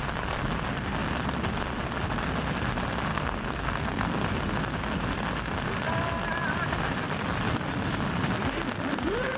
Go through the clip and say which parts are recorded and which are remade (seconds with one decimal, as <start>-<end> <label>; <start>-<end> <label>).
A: 0.0-3.1 recorded; 3.1-4.2 remade; 4.2-9.4 recorded